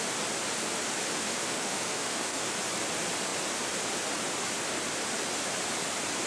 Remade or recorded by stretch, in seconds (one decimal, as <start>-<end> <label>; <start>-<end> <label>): 0.0-1.2 recorded; 1.2-2.5 remade; 2.5-6.3 recorded